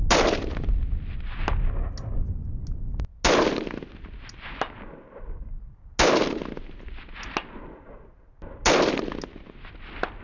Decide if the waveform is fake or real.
real